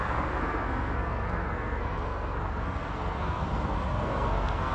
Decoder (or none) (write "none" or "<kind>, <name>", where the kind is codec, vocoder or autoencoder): codec, SNAC